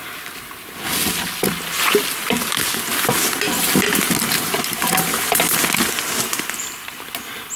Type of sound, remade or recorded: recorded